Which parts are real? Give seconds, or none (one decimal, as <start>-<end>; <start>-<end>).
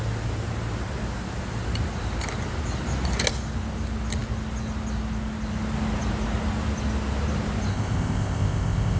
0.0-7.7